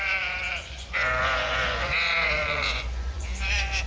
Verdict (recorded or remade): remade